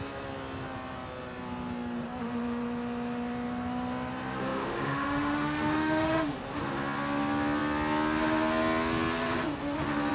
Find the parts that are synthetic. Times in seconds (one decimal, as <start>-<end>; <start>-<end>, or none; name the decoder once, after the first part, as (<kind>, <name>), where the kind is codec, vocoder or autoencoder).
4.4-6.4 (autoencoder, DAC-VAE)